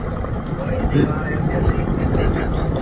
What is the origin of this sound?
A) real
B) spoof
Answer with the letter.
A